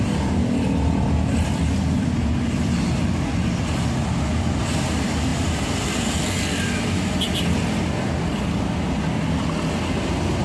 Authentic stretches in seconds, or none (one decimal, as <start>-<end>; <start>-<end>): 0.0-10.4